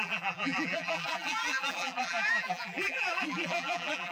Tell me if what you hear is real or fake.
fake